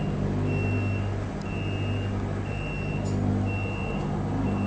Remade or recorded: recorded